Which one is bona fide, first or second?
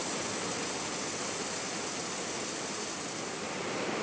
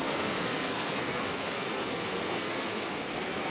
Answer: first